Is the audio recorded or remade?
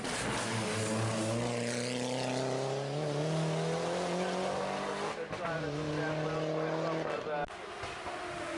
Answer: recorded